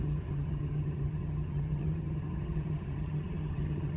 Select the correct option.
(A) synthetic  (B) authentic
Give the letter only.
A